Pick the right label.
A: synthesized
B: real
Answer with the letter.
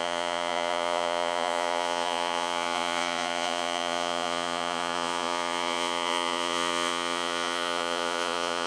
A